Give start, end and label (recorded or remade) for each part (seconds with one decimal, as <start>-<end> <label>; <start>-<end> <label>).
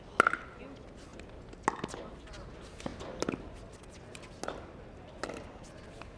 0.0-6.2 recorded